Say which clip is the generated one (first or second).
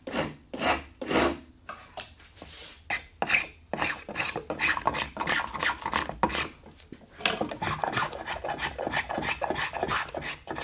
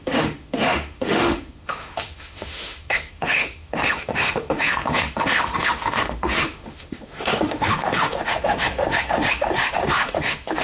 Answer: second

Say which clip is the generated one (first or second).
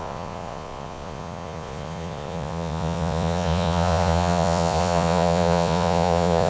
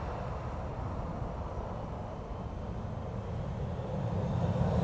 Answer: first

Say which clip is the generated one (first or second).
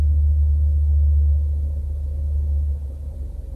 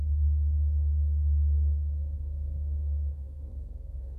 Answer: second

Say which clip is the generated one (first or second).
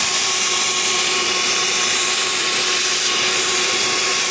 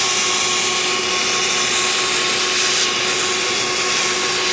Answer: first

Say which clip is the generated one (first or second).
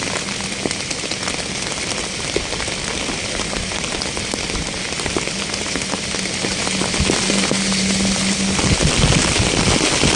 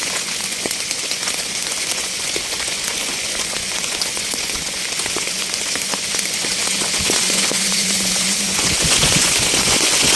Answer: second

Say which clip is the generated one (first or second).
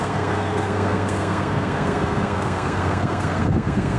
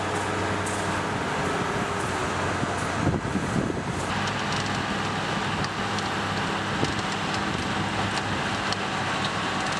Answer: first